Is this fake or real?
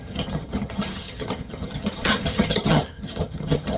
fake